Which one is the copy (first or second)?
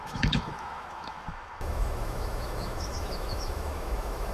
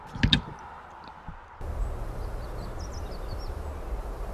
first